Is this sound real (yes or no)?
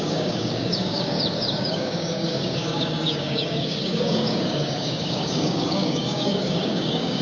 no